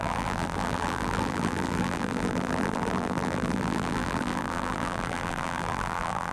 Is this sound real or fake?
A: fake